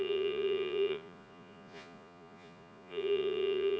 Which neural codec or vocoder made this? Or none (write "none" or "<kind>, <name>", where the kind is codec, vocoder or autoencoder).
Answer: vocoder, Vocos